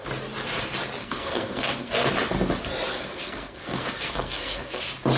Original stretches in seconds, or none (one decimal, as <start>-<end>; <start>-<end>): 0.0-1.0; 2.1-2.9; 4.8-5.2